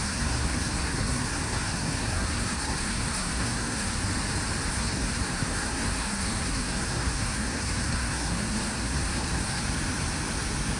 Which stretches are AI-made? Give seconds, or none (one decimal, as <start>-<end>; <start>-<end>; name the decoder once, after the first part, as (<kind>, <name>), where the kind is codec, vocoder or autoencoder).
0.0-4.0 (codec, SNAC); 4.7-9.6